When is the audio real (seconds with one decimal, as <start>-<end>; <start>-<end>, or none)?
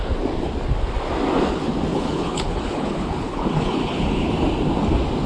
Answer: 0.0-1.9; 4.3-5.3